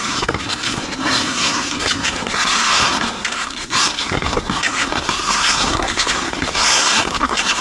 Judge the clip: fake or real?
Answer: fake